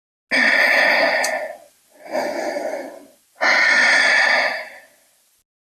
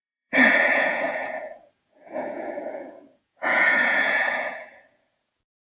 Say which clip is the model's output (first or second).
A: second